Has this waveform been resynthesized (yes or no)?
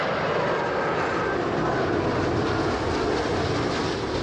no